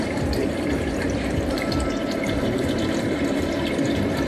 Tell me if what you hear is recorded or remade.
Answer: remade